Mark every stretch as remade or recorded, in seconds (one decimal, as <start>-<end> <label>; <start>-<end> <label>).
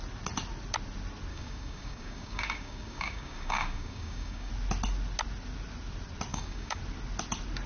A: 0.0-1.3 recorded; 1.3-4.5 remade; 4.5-6.3 recorded; 6.3-6.8 remade; 6.8-7.7 recorded